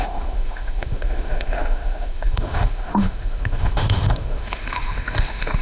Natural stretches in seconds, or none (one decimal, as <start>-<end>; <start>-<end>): none